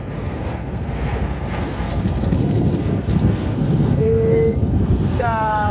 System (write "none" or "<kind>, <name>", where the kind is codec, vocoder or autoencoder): codec, SNAC